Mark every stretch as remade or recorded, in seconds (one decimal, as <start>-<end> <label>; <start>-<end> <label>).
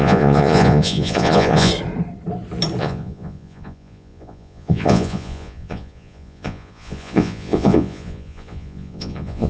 0.0-1.7 remade; 1.7-2.8 recorded; 2.8-9.5 remade